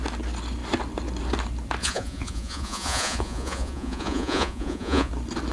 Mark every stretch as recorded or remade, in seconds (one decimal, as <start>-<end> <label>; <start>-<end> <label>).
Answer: 0.0-1.8 recorded; 1.8-5.1 remade; 5.1-5.5 recorded

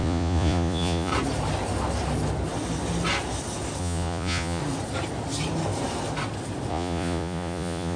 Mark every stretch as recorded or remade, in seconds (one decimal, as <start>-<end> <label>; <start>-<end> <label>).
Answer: 0.0-1.1 remade; 1.1-3.8 recorded; 3.8-4.6 remade; 4.6-6.7 recorded; 6.7-8.0 remade